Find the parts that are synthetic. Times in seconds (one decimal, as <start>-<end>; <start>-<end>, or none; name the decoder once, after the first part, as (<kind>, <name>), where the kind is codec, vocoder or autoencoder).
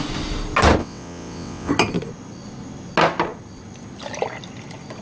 0.8-1.7 (vocoder, WaveNeXt)